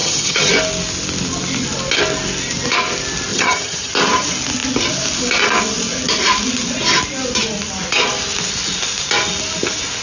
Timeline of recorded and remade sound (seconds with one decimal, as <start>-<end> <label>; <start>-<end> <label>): 0.0-0.5 remade; 0.5-3.3 recorded; 3.3-3.9 remade; 3.9-10.0 recorded